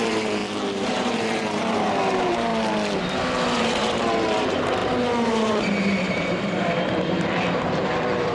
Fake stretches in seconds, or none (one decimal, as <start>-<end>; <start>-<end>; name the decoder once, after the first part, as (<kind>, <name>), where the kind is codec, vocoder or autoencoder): 0.0-2.5 (vocoder, BigVGAN v2); 3.6-4.8; 5.3-8.3